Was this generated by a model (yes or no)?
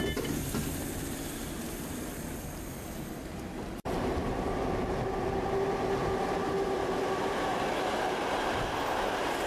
no